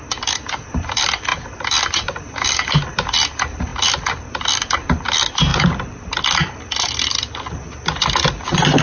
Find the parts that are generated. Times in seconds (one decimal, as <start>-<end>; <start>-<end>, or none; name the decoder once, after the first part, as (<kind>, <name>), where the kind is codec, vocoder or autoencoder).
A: none